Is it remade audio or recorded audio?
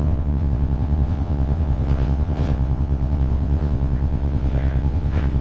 remade